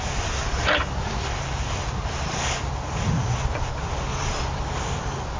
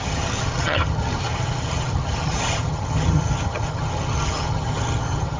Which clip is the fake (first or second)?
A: second